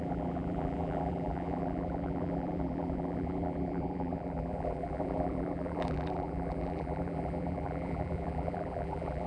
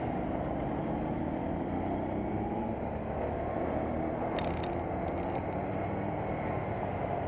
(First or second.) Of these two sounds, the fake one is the first